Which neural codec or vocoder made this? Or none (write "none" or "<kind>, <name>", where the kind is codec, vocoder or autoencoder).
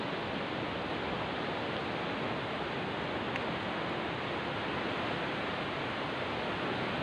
none